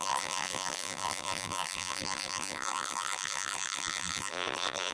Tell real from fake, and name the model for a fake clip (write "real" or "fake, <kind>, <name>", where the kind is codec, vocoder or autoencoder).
fake, vocoder, BigVGAN v2